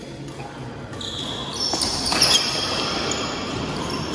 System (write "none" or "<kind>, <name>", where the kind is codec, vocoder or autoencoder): none